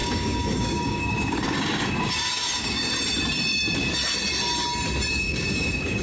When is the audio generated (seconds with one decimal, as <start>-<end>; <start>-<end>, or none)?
0.0-2.9; 5.1-6.0

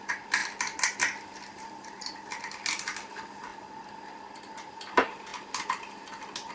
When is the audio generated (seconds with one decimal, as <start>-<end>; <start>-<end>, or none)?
none

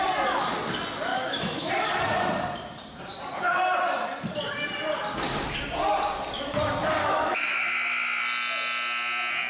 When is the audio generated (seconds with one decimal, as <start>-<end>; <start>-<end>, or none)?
1.1-1.7; 7.0-8.2